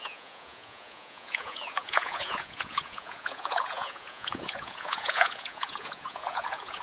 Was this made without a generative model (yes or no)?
no